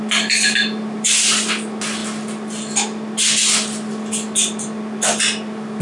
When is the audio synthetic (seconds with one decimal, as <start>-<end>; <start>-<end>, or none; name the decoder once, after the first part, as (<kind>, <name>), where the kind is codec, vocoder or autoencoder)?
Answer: none